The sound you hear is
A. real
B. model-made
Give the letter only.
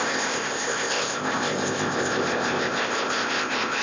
B